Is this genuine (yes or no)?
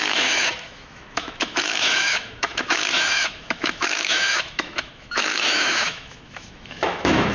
no